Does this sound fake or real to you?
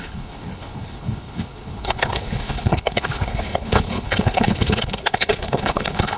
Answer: fake